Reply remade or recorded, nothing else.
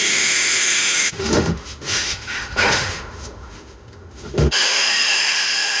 remade